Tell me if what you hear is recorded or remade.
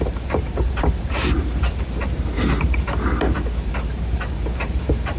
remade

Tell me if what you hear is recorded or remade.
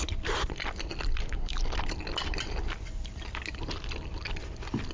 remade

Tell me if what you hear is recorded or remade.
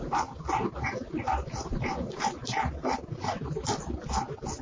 recorded